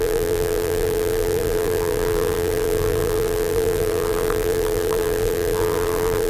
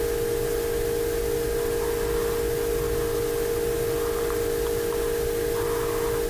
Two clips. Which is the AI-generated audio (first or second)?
first